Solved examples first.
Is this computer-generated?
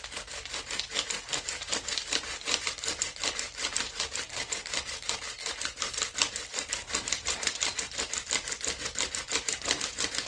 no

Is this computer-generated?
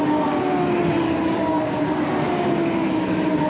no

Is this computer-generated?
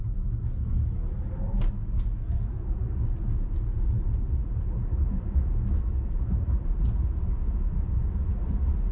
no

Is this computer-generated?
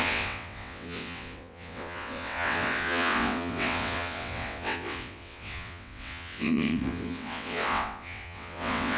yes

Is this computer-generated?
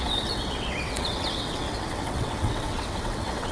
yes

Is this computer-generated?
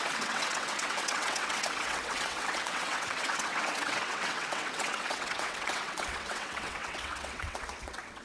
yes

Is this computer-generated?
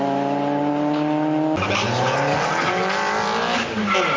no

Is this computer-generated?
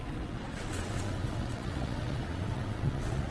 yes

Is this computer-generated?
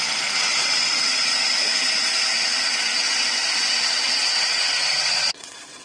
yes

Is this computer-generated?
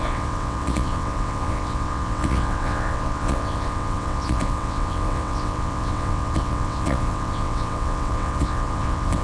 yes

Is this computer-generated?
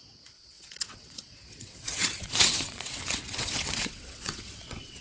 yes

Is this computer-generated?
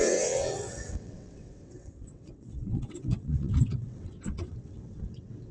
yes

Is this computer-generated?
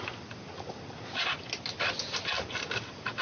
no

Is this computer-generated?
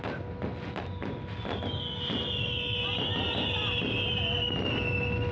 no